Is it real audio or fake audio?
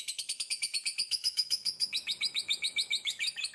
fake